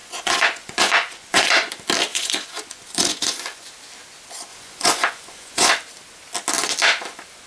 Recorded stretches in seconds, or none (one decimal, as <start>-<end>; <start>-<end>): 1.7-2.1; 3.7-4.5; 5.7-7.5